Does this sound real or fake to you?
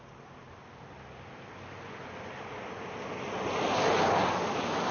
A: real